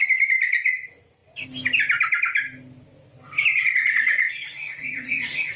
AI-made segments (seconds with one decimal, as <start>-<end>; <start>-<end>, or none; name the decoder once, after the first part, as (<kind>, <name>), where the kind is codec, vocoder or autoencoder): 3.5-5.6 (vocoder, Vocos)